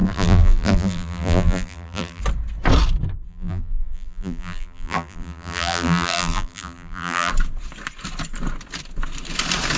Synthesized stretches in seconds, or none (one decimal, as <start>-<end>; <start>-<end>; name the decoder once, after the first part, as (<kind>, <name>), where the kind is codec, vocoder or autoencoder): 0.0-2.2 (vocoder, BigVGAN v2); 3.3-7.3